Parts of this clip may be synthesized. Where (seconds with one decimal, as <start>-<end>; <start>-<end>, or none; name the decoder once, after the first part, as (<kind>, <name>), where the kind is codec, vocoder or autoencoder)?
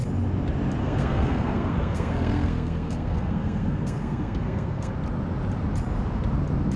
0.8-4.9 (codec, SNAC)